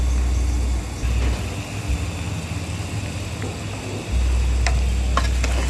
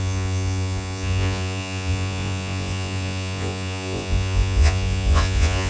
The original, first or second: first